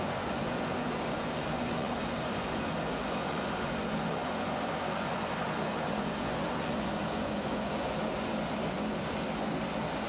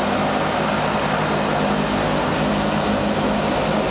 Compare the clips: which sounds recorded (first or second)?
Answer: second